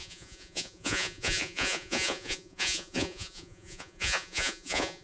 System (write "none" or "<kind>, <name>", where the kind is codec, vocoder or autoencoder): vocoder, Vocos